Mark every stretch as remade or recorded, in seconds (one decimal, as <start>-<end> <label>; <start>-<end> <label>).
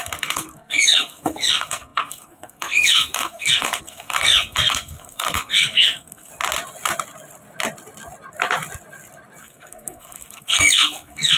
0.0-6.3 remade; 6.3-9.4 recorded; 9.4-11.4 remade